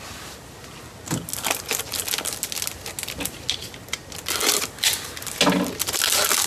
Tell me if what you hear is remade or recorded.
recorded